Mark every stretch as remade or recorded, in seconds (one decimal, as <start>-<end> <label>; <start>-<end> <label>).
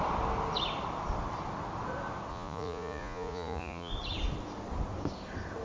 0.0-2.3 recorded; 2.3-3.9 remade; 3.9-5.6 recorded